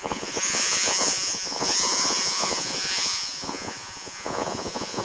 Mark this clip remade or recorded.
remade